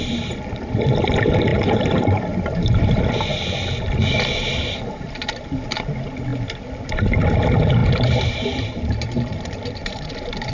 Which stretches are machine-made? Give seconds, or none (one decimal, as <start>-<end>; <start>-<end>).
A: 1.5-3.0; 7.8-10.1